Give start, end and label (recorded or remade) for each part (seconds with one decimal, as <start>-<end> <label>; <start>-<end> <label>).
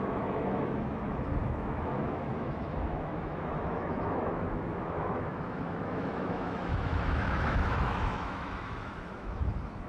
0.0-9.9 remade